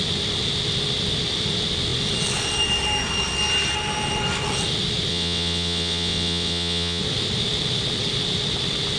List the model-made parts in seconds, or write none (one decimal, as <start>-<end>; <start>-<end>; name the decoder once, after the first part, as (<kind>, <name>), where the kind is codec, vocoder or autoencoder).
5.1-7.0 (vocoder, WaveNeXt)